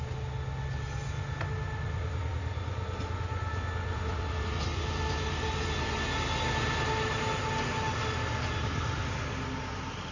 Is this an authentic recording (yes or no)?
yes